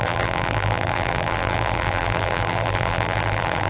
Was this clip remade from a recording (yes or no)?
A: yes